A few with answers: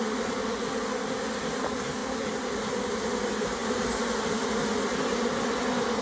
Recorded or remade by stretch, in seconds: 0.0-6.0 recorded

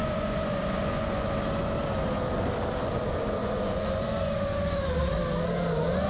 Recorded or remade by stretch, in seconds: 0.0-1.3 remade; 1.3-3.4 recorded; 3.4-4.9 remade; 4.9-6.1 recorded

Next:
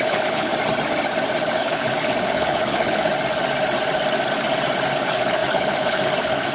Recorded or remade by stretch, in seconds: 0.0-0.5 remade; 0.5-1.6 recorded; 1.6-3.1 remade; 3.1-4.9 recorded; 4.9-6.5 remade

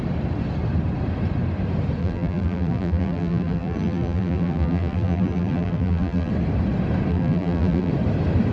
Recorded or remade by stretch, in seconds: 0.0-2.0 recorded; 2.0-6.3 remade; 6.3-7.1 recorded; 7.1-7.9 remade; 7.9-8.5 recorded